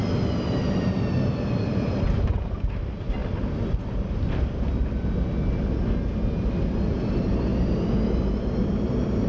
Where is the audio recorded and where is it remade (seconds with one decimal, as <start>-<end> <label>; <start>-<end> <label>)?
0.0-9.3 recorded